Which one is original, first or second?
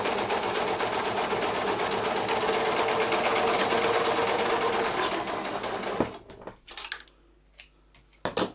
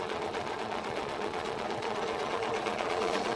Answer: first